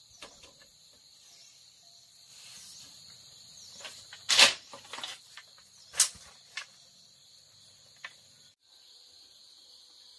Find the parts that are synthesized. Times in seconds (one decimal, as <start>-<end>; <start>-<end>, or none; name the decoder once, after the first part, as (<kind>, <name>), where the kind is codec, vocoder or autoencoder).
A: 0.0-2.3 (vocoder, BigVGAN v2); 4.3-5.6; 6.2-10.2